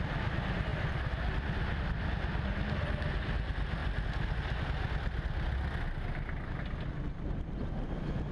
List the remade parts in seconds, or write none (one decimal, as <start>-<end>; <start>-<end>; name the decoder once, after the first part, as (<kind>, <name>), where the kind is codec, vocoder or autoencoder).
none